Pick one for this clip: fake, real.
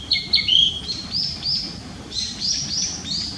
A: fake